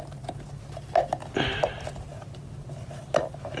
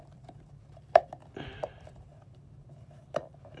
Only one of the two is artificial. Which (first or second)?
second